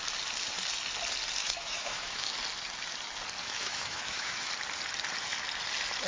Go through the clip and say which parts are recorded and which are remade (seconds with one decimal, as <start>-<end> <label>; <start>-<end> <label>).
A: 0.0-1.4 recorded; 1.4-2.3 remade; 2.3-3.4 recorded; 3.4-4.5 remade; 4.5-6.1 recorded